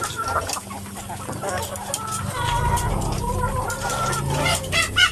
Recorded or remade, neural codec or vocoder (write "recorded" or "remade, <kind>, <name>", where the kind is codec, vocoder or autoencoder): recorded